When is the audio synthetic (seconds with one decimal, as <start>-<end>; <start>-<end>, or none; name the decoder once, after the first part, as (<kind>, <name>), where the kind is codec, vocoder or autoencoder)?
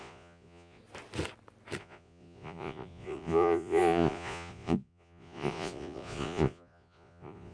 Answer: 0.0-0.8 (vocoder, Vocos); 1.8-7.5